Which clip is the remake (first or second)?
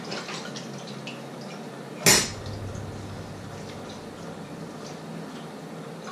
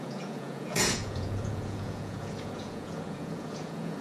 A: second